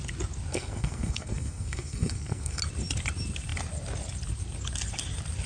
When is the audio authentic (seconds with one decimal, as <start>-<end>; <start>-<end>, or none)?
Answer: 0.0-0.5; 2.6-5.5